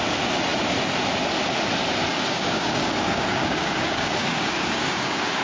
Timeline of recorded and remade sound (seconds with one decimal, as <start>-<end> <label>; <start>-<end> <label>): 0.0-2.1 recorded; 2.1-5.4 remade